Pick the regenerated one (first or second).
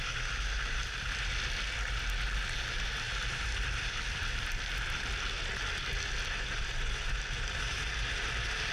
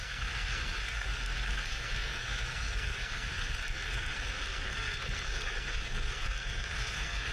second